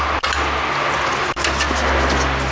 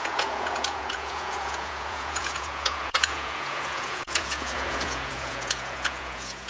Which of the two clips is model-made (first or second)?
second